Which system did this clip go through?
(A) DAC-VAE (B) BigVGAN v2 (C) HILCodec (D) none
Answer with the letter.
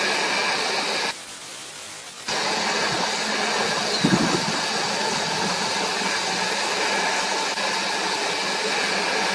D